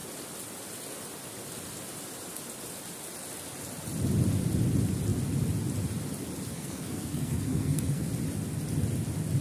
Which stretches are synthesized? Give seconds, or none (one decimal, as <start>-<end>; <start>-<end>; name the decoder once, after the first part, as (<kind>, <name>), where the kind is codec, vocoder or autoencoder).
6.5-8.1 (codec, SNAC)

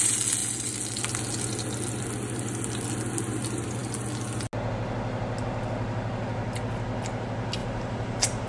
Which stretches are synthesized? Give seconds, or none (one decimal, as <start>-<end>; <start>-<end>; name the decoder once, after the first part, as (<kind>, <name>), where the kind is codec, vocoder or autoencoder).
7.6-8.5 (vocoder, BigVGAN v2)